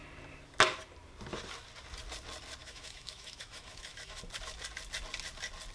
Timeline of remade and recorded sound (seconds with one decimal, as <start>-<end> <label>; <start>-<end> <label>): 0.0-2.6 recorded; 2.6-4.2 remade; 4.2-5.7 recorded